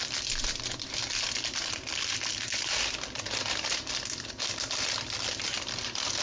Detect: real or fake fake